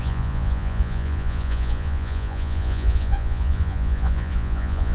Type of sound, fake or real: fake